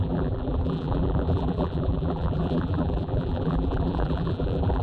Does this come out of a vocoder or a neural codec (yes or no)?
yes